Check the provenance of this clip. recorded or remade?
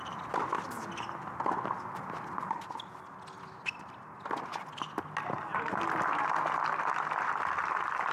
recorded